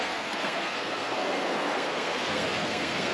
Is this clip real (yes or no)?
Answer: no